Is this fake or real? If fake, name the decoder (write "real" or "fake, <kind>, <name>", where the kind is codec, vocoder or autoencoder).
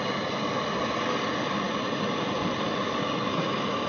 real